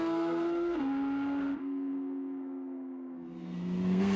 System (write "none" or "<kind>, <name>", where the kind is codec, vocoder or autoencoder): codec, SNAC